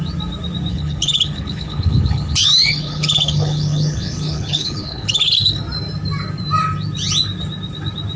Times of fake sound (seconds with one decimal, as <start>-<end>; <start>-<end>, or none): 0.7-5.6